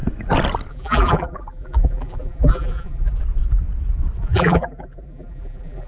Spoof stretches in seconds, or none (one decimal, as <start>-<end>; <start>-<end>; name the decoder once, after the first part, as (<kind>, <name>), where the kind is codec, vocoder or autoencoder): 0.7-3.2 (vocoder, BigVGAN v2); 4.2-5.9